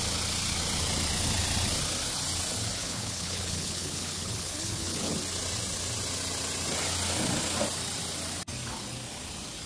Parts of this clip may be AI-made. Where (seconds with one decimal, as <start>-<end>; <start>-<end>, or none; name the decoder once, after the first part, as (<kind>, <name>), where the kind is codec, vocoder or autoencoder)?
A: 2.8-5.1 (codec, HILCodec)